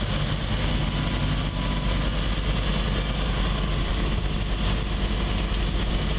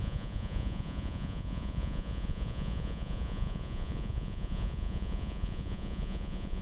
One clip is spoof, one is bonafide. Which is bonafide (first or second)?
first